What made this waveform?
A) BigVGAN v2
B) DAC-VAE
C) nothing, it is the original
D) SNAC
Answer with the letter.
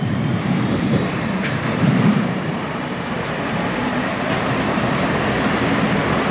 A